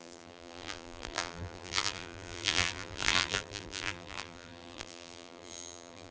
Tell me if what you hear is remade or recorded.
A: remade